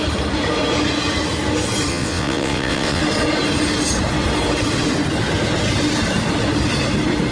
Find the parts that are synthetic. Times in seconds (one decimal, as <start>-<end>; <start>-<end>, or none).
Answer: 1.9-3.0